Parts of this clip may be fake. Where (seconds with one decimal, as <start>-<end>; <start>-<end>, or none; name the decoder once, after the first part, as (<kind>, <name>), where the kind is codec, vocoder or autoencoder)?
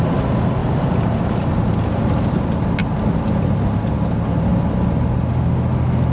none